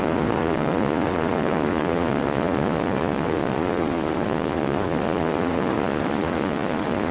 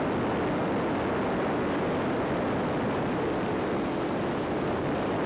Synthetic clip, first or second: first